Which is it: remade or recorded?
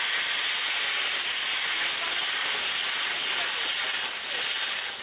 recorded